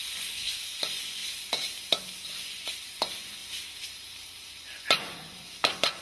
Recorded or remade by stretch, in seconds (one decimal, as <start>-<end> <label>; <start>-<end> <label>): 0.0-1.2 remade; 1.2-2.4 recorded; 2.4-3.4 remade; 3.4-4.4 recorded; 4.4-6.0 remade